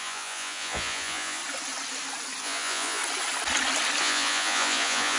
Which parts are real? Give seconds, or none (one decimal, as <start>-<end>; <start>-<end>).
1.4-2.4; 3.0-4.0